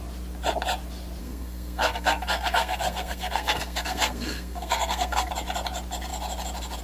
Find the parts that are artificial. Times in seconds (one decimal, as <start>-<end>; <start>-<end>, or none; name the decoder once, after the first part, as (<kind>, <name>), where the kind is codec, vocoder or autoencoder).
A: 1.2-5.3 (codec, SNAC)